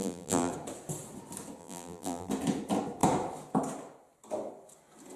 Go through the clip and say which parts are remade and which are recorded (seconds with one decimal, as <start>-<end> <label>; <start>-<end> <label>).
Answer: 0.0-0.5 remade; 0.5-1.6 recorded; 1.6-2.3 remade; 2.3-5.2 recorded